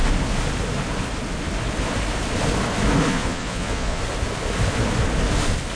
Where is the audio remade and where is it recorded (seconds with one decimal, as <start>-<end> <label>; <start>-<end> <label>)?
0.0-3.1 recorded; 3.1-4.0 remade; 4.0-5.8 recorded